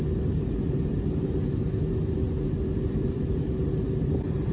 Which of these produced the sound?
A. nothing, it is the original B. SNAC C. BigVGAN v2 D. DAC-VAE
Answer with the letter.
A